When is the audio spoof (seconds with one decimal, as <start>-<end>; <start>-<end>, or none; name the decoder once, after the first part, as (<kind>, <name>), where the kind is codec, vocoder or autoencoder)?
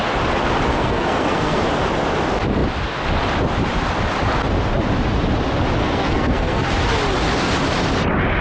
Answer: 0.7-1.6 (codec, SNAC); 5.8-6.7